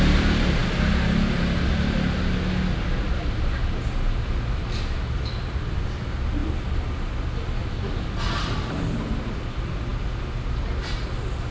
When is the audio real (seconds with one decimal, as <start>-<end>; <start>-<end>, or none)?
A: 0.0-11.5